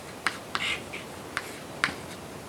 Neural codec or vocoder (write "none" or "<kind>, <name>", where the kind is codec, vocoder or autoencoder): vocoder, BigVGAN v2